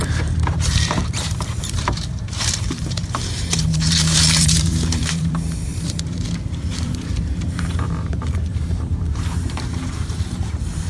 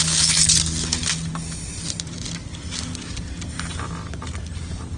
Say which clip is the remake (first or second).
first